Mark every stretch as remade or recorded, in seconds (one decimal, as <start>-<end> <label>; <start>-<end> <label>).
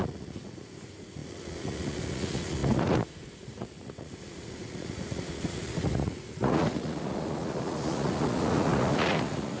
0.0-9.6 remade